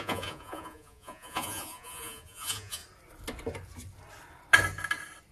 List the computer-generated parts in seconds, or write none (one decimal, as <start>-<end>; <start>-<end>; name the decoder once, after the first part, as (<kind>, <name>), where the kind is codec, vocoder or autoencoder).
0.0-2.8 (vocoder, Vocos)

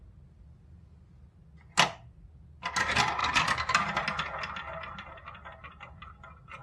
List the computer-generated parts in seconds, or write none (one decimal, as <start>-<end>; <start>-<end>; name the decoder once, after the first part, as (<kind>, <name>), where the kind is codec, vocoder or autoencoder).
none

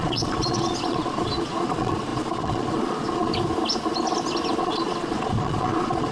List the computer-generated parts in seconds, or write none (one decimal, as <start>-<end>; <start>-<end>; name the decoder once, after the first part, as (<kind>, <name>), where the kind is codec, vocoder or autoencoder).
0.0-3.3 (vocoder, Vocos); 4.6-6.1